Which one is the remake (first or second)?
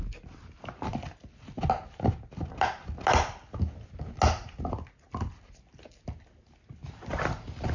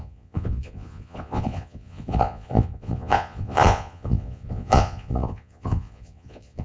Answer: second